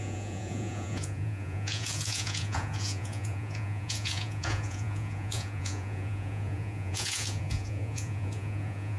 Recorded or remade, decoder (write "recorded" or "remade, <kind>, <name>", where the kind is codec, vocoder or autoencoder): remade, vocoder, Vocos